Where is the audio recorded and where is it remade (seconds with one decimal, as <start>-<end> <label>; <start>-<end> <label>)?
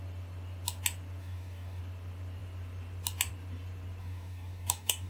0.0-1.2 recorded; 1.2-1.8 remade; 1.8-4.0 recorded; 4.0-5.1 remade